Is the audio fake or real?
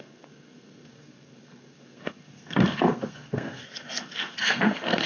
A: fake